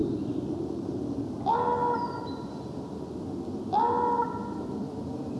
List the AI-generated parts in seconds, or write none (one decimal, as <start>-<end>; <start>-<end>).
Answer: 0.0-1.2